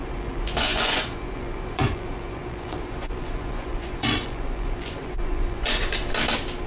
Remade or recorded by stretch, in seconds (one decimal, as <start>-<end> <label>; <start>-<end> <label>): 0.0-6.0 remade; 6.0-6.7 recorded